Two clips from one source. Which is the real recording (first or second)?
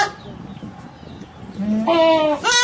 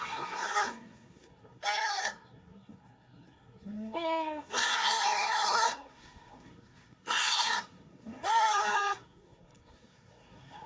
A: first